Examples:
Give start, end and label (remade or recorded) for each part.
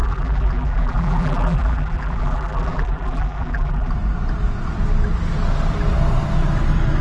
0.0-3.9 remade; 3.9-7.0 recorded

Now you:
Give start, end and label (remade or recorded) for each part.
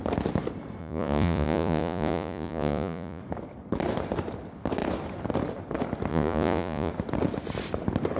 0.0-0.8 recorded; 0.8-3.2 remade; 3.2-6.1 recorded; 6.1-6.9 remade; 6.9-8.2 recorded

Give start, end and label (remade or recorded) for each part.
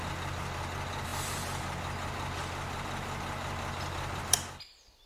0.0-5.1 recorded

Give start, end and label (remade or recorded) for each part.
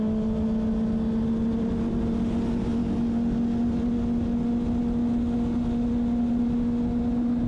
0.0-7.5 recorded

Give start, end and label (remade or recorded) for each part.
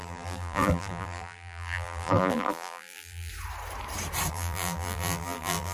0.0-3.3 remade; 3.3-4.3 recorded; 4.3-5.7 remade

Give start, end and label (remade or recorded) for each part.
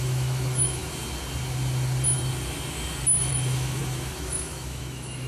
0.0-0.8 remade; 0.8-3.3 recorded; 3.3-5.3 remade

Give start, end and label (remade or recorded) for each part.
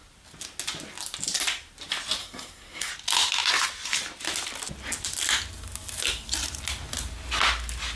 0.0-2.2 recorded; 2.2-2.9 remade; 2.9-8.0 recorded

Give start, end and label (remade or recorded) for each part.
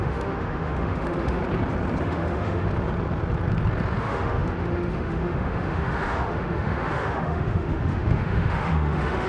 0.0-1.4 remade; 1.4-2.0 recorded; 2.0-2.7 remade; 2.7-4.0 recorded; 4.0-9.3 remade